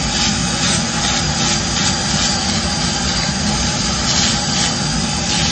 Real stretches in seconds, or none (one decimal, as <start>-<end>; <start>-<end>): 0.0-0.4; 1.0-5.5